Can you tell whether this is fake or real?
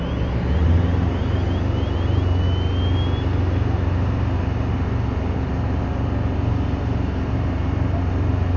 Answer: real